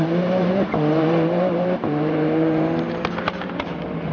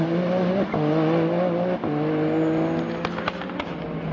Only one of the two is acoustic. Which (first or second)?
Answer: second